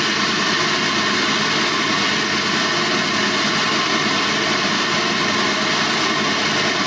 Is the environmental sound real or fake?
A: real